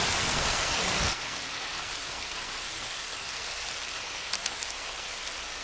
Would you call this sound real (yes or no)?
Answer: no